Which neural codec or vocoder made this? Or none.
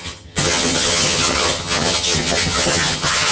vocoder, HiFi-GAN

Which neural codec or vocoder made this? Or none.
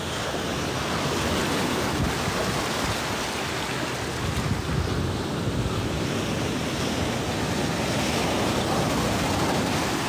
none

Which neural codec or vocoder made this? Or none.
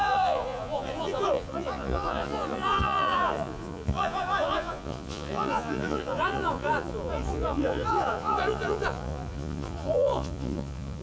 vocoder, Vocos